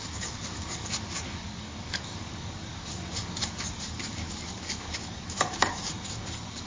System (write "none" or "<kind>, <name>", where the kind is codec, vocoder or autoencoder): codec, DAC